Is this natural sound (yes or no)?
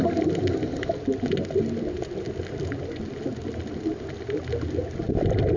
yes